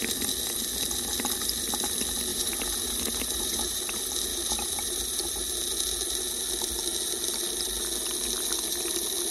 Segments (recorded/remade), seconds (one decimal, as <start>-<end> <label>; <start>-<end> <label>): 0.0-2.3 recorded; 2.3-3.8 remade; 3.8-4.3 recorded; 4.3-5.0 remade; 5.0-9.3 recorded